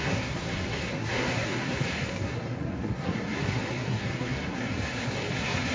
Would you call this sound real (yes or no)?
no